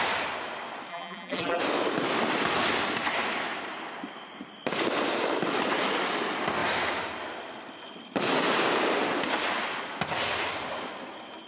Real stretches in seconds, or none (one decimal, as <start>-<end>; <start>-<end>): 0.0-0.9; 1.6-11.5